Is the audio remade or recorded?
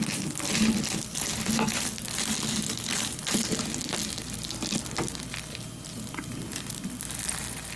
recorded